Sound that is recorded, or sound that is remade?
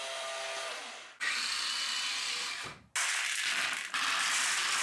recorded